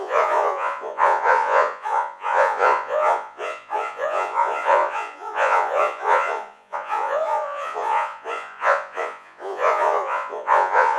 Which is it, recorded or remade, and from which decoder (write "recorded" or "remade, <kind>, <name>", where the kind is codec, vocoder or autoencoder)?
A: remade, vocoder, Vocos